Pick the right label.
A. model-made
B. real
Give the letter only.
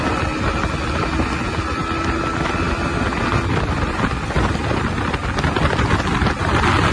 B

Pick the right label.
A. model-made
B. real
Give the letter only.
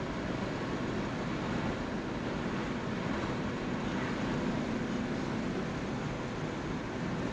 B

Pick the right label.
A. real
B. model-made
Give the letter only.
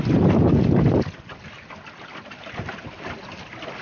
A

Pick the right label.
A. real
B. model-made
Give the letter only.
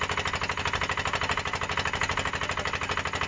A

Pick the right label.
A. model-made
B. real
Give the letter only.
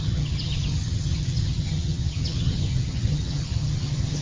A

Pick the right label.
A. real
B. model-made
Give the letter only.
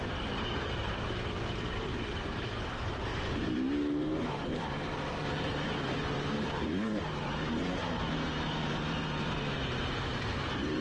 B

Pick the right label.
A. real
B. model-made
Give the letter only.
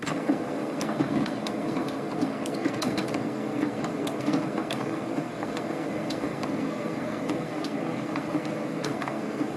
B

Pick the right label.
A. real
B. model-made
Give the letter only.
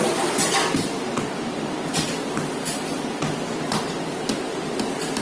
A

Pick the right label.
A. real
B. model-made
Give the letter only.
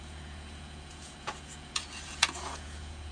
B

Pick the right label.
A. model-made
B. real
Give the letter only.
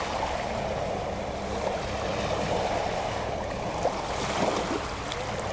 B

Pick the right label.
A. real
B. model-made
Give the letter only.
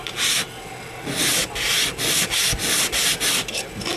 A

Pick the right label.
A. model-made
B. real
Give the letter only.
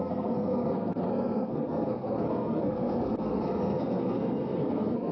A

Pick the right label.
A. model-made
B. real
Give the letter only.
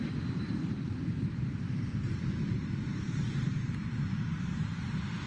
A